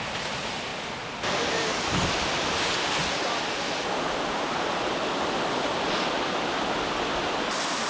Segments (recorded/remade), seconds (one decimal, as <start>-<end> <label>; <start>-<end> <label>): 0.0-7.9 recorded

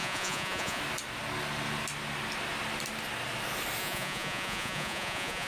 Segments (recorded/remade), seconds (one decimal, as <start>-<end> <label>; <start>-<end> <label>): 0.0-0.8 remade; 0.8-3.8 recorded; 3.8-5.5 remade

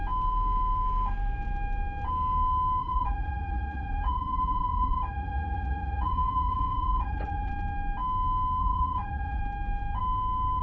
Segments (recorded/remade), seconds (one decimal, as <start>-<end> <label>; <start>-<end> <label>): 0.0-2.8 recorded; 2.8-7.5 remade; 7.5-8.6 recorded; 8.6-9.4 remade; 9.4-10.6 recorded

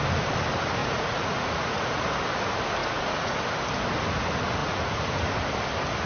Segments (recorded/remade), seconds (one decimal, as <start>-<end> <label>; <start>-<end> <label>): 0.0-0.8 recorded; 0.8-2.1 remade; 2.1-2.8 recorded; 2.8-3.4 remade; 3.4-4.6 recorded; 4.6-5.3 remade; 5.3-6.1 recorded